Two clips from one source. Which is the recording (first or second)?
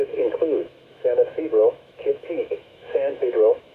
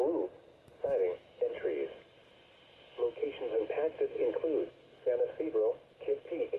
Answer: second